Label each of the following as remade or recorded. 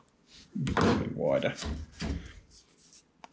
recorded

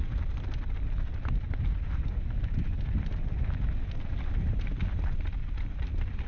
recorded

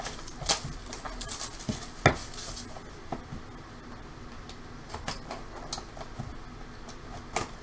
recorded